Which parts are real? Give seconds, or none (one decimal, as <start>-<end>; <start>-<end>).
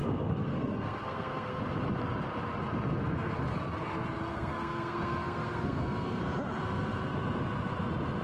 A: 1.6-4.3; 6.2-8.2